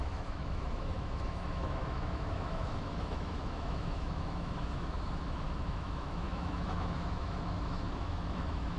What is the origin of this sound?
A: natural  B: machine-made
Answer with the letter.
B